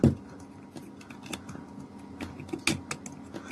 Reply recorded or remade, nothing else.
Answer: recorded